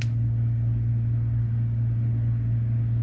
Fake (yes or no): no